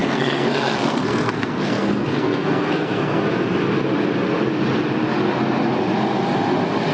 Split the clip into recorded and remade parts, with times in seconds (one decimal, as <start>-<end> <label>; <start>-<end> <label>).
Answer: 0.0-3.2 remade; 3.2-6.9 recorded